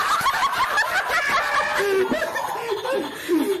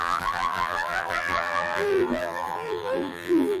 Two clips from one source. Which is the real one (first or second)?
first